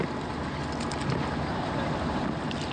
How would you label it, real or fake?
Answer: real